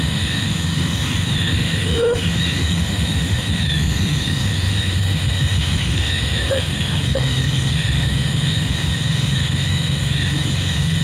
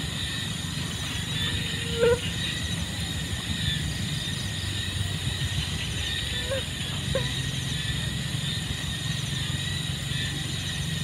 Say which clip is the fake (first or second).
first